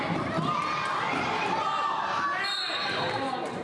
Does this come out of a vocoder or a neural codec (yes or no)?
no